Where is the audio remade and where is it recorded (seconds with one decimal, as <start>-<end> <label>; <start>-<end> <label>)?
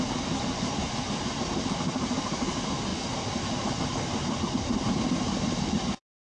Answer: 0.0-6.2 recorded